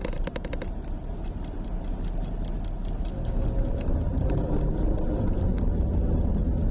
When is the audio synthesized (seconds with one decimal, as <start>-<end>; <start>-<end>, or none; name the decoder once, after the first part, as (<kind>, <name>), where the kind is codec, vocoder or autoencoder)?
none